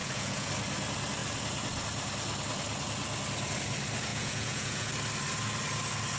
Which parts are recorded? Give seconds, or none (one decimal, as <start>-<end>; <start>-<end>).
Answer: 0.5-4.1; 4.9-6.2